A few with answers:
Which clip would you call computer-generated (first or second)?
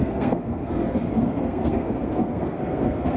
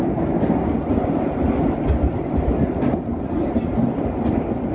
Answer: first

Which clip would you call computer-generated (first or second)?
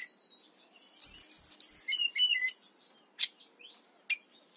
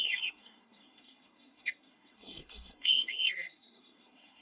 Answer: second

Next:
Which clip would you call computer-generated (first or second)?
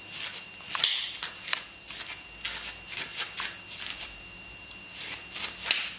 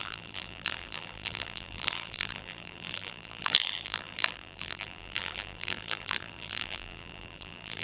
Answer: second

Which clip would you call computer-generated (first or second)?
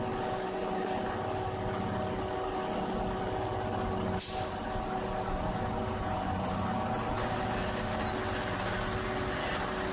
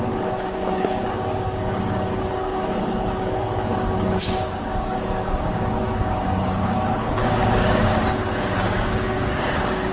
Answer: second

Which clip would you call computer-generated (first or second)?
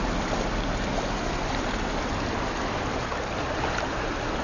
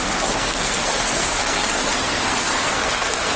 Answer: second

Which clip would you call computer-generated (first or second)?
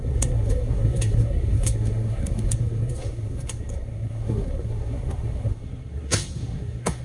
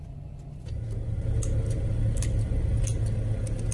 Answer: first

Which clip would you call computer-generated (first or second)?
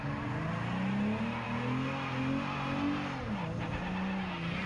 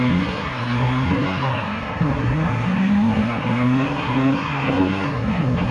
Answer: second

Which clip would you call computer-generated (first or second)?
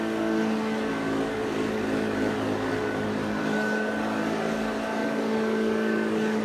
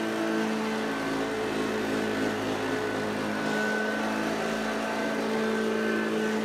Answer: first